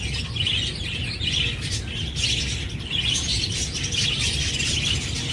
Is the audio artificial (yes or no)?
no